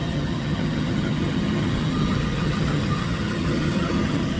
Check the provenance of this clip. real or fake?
fake